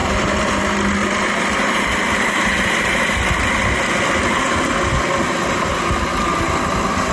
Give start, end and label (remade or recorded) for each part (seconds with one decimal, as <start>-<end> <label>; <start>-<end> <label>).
0.0-0.6 remade; 0.6-1.0 recorded; 1.0-2.5 remade; 2.5-7.1 recorded